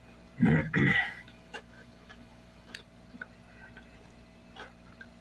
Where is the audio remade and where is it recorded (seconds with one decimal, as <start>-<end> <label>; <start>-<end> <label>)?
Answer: 0.0-0.6 recorded; 0.6-2.7 remade; 2.7-5.2 recorded